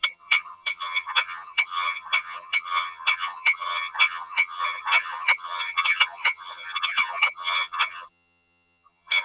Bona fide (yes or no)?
no